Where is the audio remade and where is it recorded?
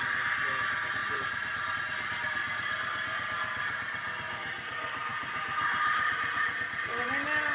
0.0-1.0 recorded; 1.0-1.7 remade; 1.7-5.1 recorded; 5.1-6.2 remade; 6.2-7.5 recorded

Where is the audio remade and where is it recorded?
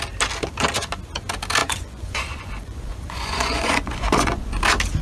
0.0-1.6 recorded; 1.6-4.6 remade; 4.6-5.0 recorded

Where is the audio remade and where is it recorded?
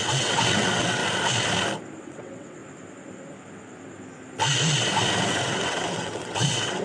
0.0-1.0 remade; 1.0-2.0 recorded; 2.0-2.6 remade; 2.6-5.3 recorded; 5.3-6.8 remade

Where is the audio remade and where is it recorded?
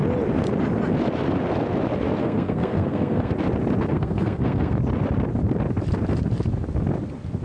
0.0-2.2 recorded; 2.2-3.3 remade; 3.3-3.9 recorded; 3.9-4.8 remade; 4.8-7.4 recorded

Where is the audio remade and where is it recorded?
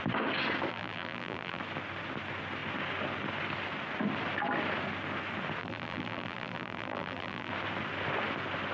0.0-0.7 recorded; 0.7-1.6 remade; 1.6-5.6 recorded; 5.6-7.5 remade; 7.5-8.7 recorded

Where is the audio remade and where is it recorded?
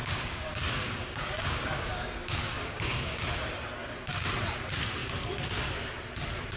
0.0-3.2 remade; 3.2-3.8 recorded; 3.8-4.3 remade; 4.3-6.6 recorded